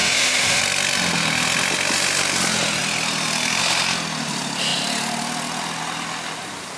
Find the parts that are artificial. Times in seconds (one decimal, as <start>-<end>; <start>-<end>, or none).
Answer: 0.0-0.6